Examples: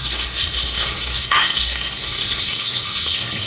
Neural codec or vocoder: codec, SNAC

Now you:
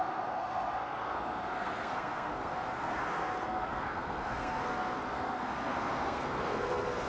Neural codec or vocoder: codec, SNAC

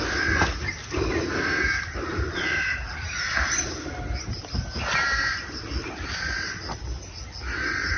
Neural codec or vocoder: none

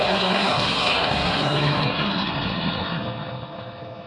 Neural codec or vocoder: codec, SNAC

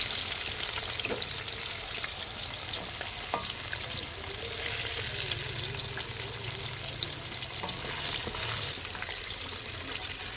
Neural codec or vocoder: none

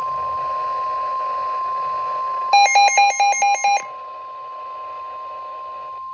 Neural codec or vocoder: none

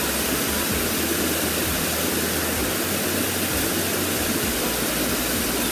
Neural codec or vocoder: none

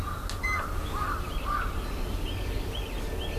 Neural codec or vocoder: none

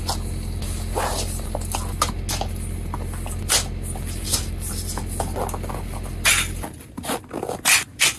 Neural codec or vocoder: none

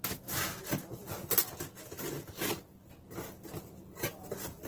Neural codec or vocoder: none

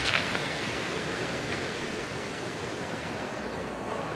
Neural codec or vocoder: codec, SNAC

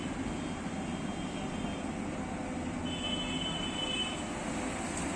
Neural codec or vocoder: none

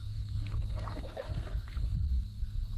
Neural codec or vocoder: codec, SNAC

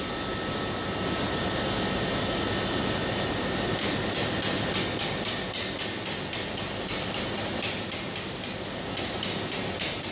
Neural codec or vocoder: none